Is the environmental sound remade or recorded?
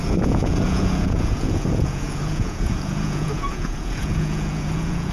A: remade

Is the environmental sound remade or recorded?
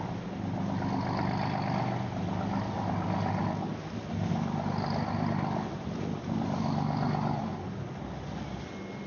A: recorded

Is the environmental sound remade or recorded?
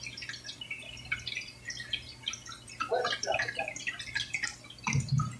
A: recorded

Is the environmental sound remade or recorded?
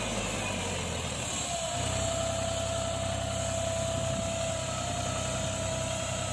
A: recorded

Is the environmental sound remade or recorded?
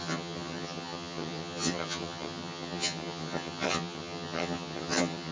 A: remade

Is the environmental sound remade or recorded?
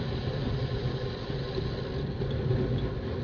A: recorded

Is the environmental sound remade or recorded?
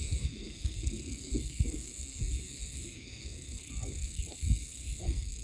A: remade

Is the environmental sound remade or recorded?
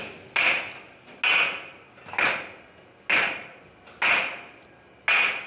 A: recorded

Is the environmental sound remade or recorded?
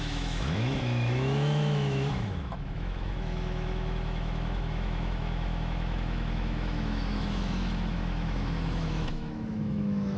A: remade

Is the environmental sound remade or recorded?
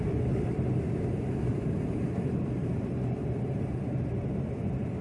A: remade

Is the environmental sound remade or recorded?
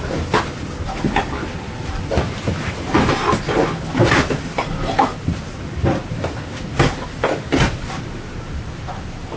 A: recorded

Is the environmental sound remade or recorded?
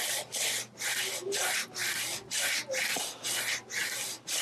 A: recorded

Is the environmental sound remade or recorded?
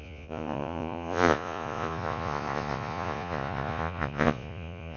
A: remade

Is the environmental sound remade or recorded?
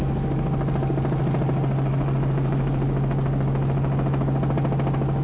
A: recorded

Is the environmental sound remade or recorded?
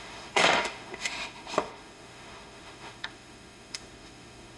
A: remade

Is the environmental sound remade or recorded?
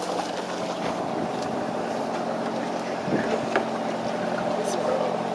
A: recorded